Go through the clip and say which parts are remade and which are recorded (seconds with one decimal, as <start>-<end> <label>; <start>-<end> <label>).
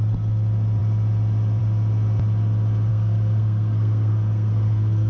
0.0-2.9 recorded; 2.9-5.1 remade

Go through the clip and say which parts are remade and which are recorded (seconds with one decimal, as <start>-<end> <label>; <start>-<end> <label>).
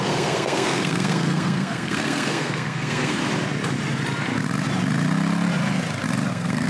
0.0-3.2 remade; 3.2-6.3 recorded; 6.3-6.7 remade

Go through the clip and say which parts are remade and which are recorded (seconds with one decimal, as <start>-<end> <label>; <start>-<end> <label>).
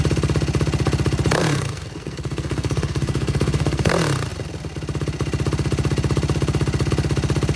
0.0-1.4 recorded; 1.4-3.9 remade; 3.9-7.6 recorded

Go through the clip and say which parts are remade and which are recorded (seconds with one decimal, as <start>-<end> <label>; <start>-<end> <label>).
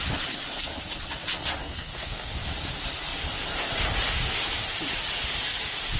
0.0-1.6 recorded; 1.6-2.4 remade; 2.4-6.0 recorded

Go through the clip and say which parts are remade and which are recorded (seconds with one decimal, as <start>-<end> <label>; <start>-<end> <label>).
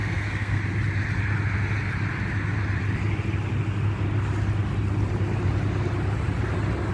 0.0-0.6 remade; 0.6-6.9 recorded